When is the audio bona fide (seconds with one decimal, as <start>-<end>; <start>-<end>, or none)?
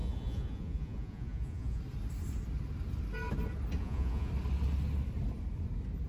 1.8-3.8; 4.3-6.1